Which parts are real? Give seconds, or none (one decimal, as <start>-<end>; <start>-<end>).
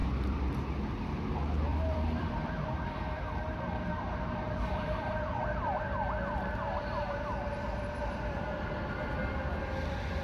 0.5-1.7; 3.0-3.5; 5.8-10.2